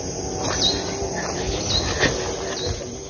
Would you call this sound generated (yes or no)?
no